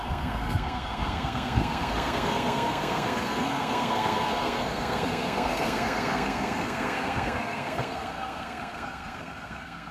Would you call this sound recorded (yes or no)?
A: no